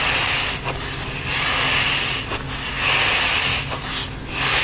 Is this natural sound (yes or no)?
yes